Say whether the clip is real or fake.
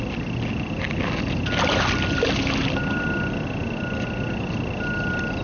real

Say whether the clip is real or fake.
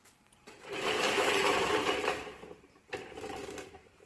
fake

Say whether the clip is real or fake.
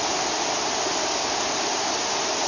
real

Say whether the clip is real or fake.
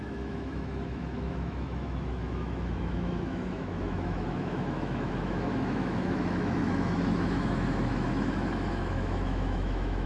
fake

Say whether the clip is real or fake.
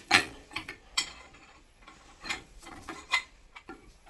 fake